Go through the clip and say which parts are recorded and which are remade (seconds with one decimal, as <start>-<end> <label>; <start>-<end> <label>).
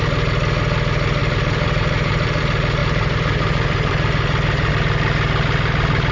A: 0.0-1.2 recorded; 1.2-2.4 remade; 2.4-2.8 recorded; 2.8-4.7 remade; 4.7-6.1 recorded